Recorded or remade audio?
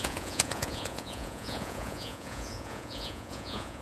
remade